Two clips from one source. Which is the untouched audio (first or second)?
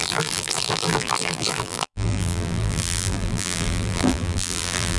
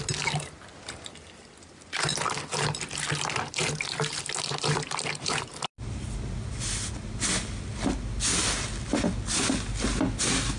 second